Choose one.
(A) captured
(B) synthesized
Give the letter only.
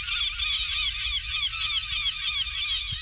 A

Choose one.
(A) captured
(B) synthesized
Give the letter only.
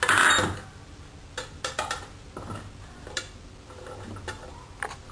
A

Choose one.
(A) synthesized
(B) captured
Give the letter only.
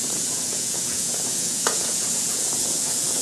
A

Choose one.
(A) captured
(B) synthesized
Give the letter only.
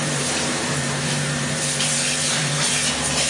B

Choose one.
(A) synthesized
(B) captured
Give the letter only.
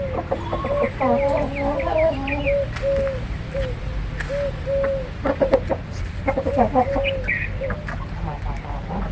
B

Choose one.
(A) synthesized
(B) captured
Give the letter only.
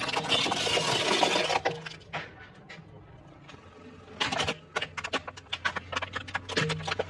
B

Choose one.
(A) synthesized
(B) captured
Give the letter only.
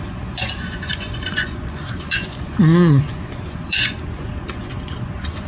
A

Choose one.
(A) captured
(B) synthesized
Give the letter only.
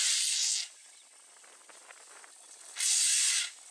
A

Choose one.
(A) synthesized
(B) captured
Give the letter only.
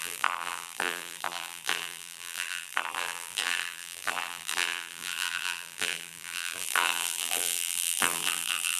A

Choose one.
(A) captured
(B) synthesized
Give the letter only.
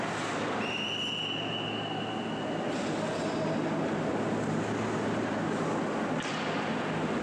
A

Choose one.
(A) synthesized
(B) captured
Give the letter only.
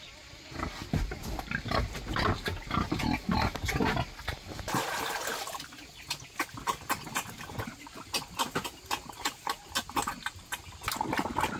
B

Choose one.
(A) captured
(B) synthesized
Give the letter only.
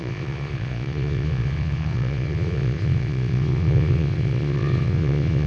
B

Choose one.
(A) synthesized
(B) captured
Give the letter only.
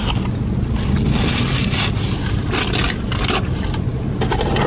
B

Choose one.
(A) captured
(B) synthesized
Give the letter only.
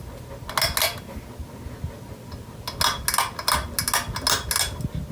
A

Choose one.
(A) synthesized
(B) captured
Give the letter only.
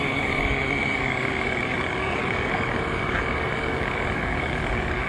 A